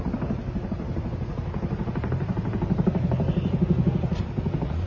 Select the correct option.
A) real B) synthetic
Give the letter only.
A